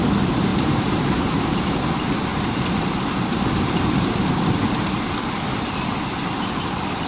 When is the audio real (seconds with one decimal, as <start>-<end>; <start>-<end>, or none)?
0.0-0.5; 1.8-2.3; 4.9-7.1